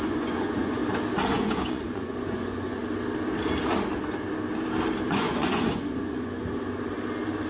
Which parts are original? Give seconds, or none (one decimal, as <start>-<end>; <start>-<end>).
0.8-1.3; 2.8-5.1; 6.4-7.5